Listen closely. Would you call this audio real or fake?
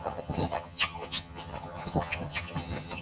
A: fake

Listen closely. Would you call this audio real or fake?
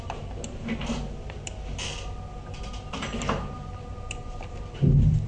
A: real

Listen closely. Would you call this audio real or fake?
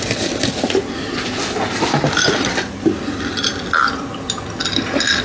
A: real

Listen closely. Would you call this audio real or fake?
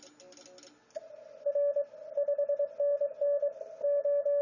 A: real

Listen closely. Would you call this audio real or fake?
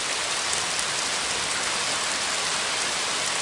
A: real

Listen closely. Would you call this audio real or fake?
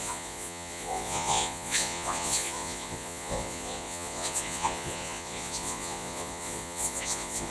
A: fake